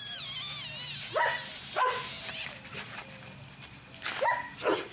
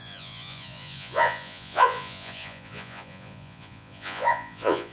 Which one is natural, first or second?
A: first